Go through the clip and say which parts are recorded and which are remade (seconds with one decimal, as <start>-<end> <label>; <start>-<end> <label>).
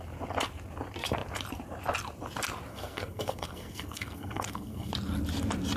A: 0.0-2.7 recorded; 2.7-4.9 remade; 4.9-5.8 recorded